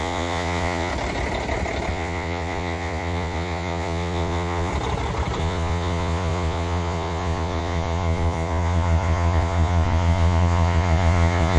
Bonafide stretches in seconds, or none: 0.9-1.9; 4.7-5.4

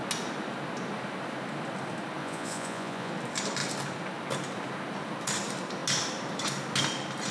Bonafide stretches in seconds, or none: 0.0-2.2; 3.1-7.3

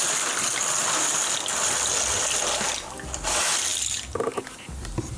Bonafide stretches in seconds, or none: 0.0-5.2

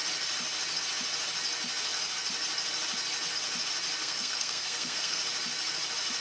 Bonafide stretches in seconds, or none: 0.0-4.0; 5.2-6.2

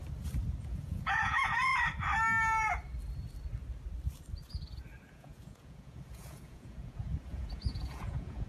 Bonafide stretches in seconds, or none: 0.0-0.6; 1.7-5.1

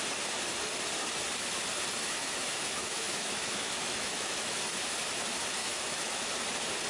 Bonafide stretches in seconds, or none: 0.0-2.0; 4.6-5.6; 6.3-6.9

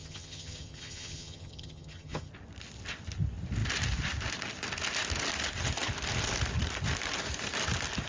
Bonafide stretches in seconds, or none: 2.3-8.1